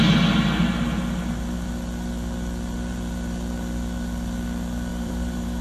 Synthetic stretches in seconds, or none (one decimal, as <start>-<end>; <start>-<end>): 4.9-5.6